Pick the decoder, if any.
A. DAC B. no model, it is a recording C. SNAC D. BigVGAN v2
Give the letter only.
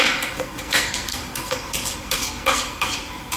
C